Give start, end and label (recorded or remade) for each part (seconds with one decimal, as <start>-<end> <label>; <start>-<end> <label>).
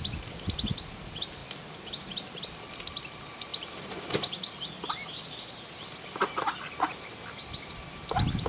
0.0-8.5 recorded